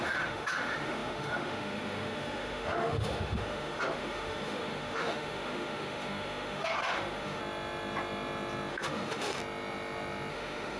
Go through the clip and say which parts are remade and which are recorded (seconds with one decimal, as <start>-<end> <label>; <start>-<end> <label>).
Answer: 0.0-7.4 remade; 7.4-8.7 recorded; 8.7-9.4 remade; 9.4-10.3 recorded; 10.3-10.8 remade